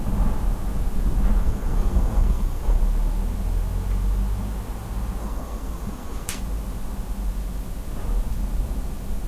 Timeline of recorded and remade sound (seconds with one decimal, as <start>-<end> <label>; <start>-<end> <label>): 0.0-1.4 recorded; 1.4-2.8 remade; 2.8-5.2 recorded; 5.2-6.4 remade; 6.4-9.3 recorded